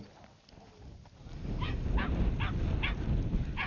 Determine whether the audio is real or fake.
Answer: real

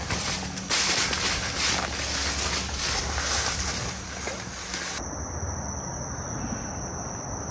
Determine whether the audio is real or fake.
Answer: real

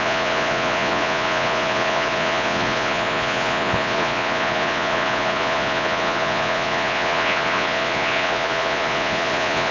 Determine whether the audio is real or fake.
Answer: fake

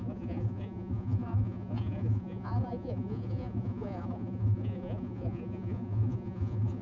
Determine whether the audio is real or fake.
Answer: fake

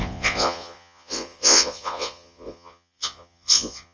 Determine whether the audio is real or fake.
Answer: fake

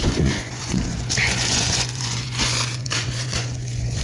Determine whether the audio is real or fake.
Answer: fake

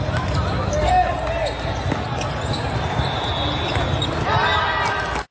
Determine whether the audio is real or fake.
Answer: real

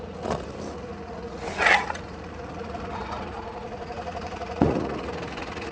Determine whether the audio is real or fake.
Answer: fake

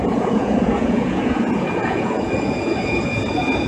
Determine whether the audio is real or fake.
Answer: fake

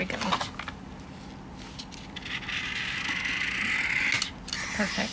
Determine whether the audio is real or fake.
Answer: real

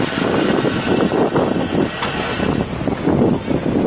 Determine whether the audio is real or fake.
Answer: real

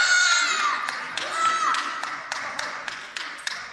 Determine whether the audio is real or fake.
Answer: fake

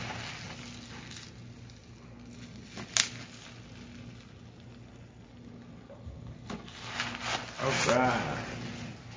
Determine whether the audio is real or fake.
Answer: real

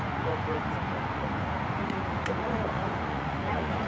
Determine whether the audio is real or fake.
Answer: fake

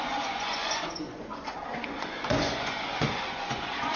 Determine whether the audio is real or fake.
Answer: fake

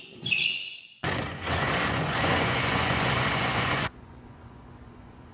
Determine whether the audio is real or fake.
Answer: fake